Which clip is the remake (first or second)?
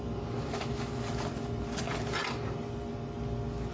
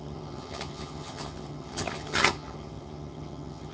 second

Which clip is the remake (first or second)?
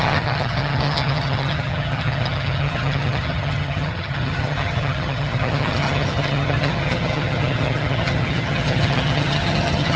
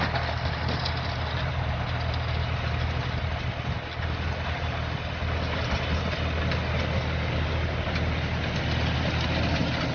first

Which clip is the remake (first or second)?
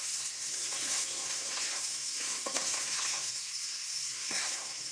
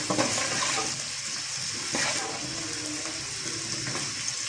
first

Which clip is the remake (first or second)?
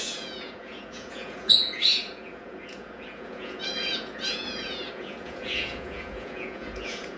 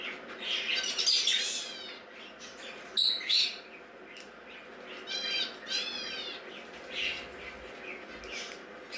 first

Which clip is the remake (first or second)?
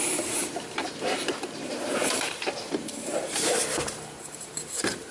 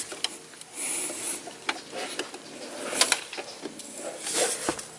first